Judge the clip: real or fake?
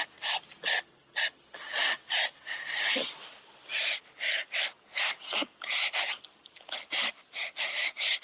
real